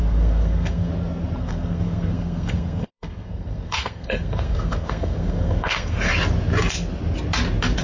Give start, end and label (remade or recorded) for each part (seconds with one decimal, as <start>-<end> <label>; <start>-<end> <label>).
0.0-0.9 remade; 0.9-1.4 recorded; 1.4-6.1 remade; 6.1-7.8 recorded